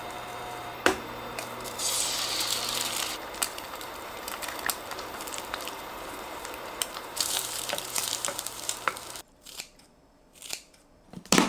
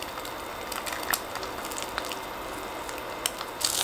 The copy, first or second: first